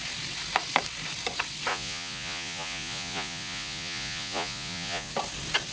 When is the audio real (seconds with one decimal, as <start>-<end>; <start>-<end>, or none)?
0.0-1.7; 5.1-5.7